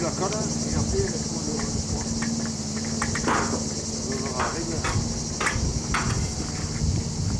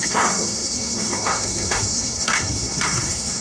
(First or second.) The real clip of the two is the first